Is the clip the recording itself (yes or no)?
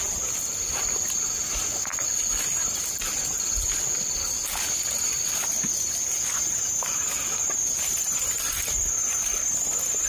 yes